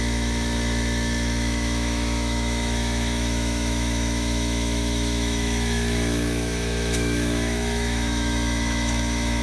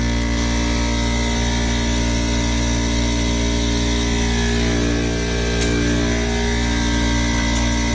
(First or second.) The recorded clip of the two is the second